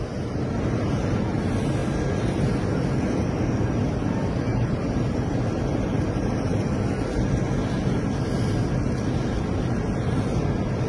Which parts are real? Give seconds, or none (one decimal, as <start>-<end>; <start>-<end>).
0.0-10.9